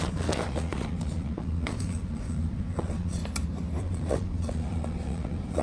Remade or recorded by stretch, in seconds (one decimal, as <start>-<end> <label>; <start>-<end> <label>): 0.0-3.2 remade; 3.2-3.8 recorded; 3.8-5.6 remade